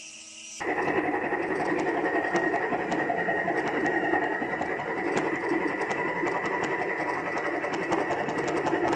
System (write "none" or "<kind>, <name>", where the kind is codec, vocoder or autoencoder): none